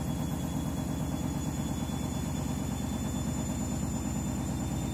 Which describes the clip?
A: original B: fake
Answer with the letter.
A